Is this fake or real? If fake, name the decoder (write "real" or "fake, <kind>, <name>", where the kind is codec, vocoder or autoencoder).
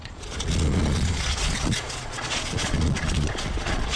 fake, vocoder, Vocos